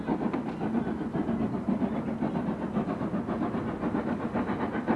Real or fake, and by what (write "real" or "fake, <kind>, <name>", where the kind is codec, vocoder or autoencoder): real